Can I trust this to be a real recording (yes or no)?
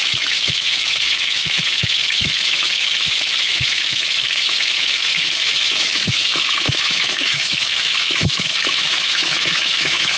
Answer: no